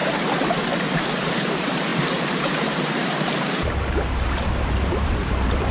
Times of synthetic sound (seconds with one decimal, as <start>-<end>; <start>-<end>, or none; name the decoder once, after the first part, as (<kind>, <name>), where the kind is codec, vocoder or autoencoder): 0.9-5.7 (vocoder, BigVGAN v2)